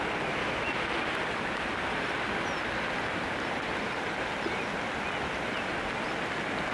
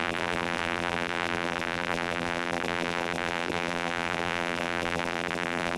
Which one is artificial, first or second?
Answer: second